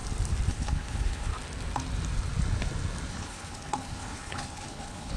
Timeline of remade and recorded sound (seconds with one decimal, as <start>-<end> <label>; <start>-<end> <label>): 0.0-0.5 recorded; 0.5-1.3 remade; 1.3-3.1 recorded; 3.1-5.2 remade